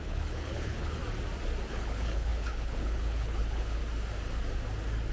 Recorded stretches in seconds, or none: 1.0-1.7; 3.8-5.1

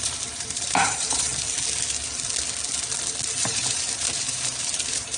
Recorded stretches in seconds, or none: 1.3-3.4